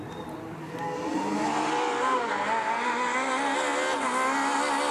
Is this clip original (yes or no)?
yes